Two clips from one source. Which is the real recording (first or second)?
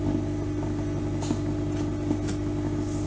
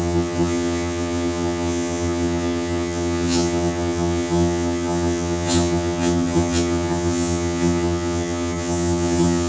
first